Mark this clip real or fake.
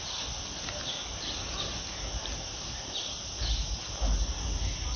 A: real